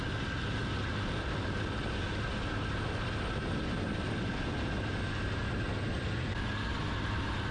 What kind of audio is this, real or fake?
real